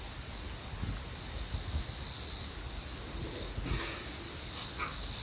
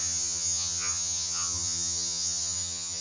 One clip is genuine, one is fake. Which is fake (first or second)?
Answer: second